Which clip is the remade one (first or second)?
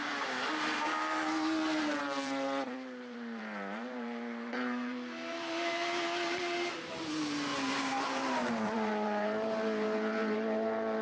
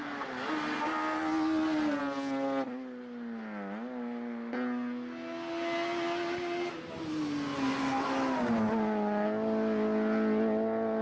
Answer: first